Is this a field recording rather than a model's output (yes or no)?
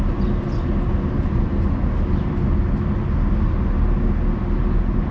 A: yes